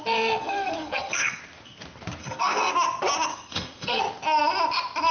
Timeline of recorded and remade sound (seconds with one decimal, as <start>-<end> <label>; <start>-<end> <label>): 0.0-0.4 recorded; 0.4-1.4 remade; 1.4-2.2 recorded; 2.2-2.7 remade; 2.7-3.3 recorded; 3.3-4.0 remade; 4.0-5.1 recorded